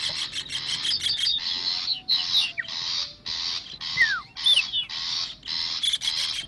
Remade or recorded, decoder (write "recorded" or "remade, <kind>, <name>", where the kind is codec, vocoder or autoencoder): recorded